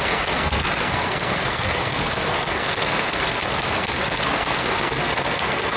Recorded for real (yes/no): no